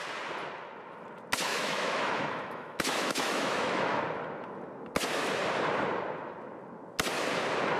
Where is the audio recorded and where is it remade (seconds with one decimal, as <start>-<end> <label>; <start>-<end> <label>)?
0.0-1.5 recorded; 1.5-4.0 remade; 4.0-7.8 recorded